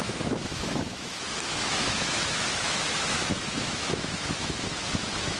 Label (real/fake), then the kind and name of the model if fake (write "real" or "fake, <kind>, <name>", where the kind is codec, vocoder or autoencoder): fake, autoencoder, DAC-VAE